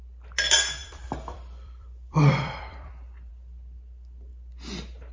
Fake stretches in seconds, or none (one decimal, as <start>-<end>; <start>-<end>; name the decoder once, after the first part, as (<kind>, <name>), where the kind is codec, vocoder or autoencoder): 0.8-3.3 (vocoder, BigVGAN v2)